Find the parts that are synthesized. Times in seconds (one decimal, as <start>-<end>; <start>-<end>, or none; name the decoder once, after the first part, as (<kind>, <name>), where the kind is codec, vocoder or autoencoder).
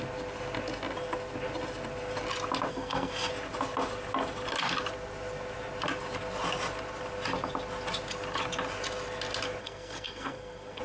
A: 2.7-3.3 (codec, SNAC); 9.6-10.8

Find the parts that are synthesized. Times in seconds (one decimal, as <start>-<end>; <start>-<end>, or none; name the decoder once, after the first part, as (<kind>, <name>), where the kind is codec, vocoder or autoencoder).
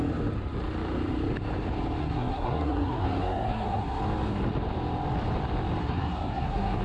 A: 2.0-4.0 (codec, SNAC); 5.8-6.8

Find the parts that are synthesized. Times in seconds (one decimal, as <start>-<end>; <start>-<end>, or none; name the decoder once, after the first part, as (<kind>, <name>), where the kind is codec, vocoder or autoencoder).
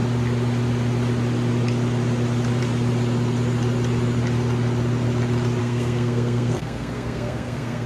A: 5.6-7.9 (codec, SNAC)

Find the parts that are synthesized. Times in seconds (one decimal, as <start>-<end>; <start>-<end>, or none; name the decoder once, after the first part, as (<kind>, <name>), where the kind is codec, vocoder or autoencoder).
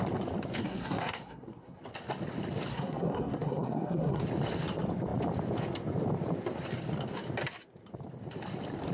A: 0.6-1.8 (codec, SNAC); 2.7-4.2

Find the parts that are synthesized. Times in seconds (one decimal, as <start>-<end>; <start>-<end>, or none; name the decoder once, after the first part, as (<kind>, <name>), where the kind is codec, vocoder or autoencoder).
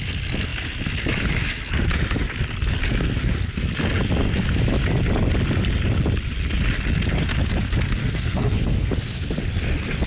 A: 8.0-8.9 (codec, SNAC)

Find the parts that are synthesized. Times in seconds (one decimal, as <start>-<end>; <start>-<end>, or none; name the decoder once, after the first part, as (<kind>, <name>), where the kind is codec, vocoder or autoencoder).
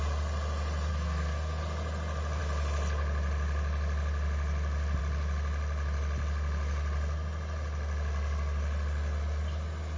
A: 0.9-1.6 (codec, SNAC)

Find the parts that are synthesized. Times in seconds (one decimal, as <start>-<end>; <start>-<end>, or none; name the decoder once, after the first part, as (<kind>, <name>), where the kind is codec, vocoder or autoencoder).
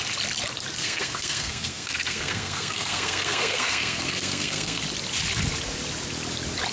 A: 0.8-4.8 (codec, SNAC)